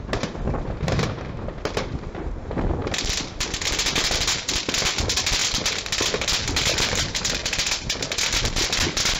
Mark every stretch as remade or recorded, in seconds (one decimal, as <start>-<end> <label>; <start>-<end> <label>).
0.0-9.2 recorded